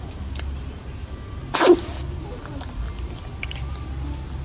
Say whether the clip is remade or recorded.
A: recorded